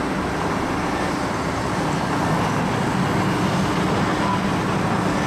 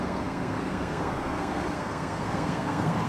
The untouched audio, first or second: first